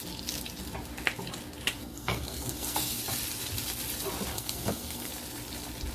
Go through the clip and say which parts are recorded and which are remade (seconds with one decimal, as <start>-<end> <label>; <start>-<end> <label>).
0.0-1.8 recorded; 1.8-3.0 remade; 3.0-4.3 recorded; 4.3-5.1 remade; 5.1-5.9 recorded

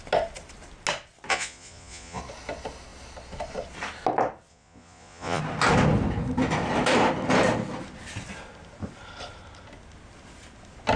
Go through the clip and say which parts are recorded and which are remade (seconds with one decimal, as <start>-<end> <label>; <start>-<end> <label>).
0.0-1.3 recorded; 1.3-2.2 remade; 2.2-4.5 recorded; 4.5-5.4 remade; 5.4-11.0 recorded